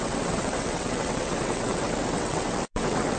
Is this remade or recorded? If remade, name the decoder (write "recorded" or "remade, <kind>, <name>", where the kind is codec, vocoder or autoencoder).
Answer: remade, vocoder, WaveNeXt